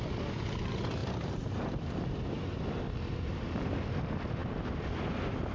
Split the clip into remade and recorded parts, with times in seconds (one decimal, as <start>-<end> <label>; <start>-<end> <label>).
0.0-5.5 recorded